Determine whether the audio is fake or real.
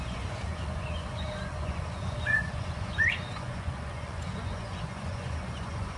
fake